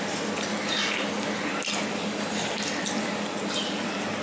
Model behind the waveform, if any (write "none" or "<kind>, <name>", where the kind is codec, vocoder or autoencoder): none